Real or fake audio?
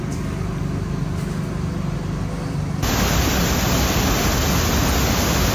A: real